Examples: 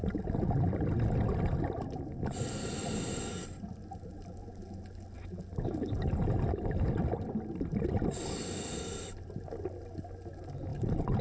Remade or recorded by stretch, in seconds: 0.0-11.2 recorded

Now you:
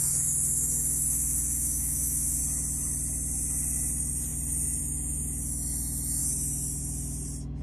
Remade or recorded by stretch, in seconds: 0.0-2.4 remade; 2.4-7.6 recorded

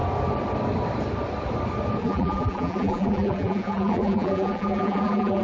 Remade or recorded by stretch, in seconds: 0.0-2.0 recorded; 2.0-5.4 remade

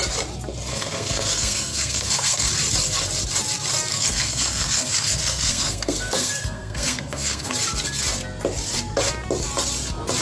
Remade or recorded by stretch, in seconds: 0.0-0.7 recorded; 0.7-2.5 remade; 2.5-3.9 recorded; 3.9-7.5 remade; 7.5-10.2 recorded

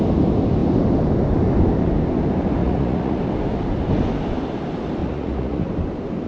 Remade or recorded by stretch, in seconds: 0.0-2.6 recorded; 2.6-3.2 remade; 3.2-5.0 recorded; 5.0-5.7 remade; 5.7-6.3 recorded

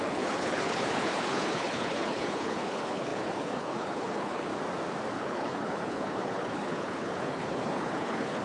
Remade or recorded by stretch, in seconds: 0.0-4.5 remade; 4.5-5.2 recorded; 5.2-8.4 remade

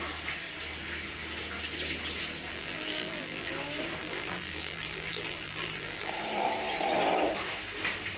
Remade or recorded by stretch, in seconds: 0.0-2.5 recorded; 2.5-3.5 remade; 3.5-4.0 recorded; 4.0-6.1 remade; 6.1-8.2 recorded

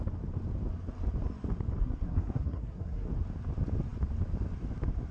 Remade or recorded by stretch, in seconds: 0.0-1.8 recorded; 1.8-3.1 remade; 3.1-5.1 recorded